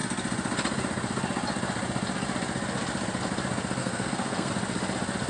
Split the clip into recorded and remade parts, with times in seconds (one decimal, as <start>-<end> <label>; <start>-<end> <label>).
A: 0.0-3.8 recorded; 3.8-4.5 remade; 4.5-5.3 recorded